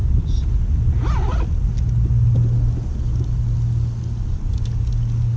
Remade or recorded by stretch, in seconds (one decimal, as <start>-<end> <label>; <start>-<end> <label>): 0.0-5.4 recorded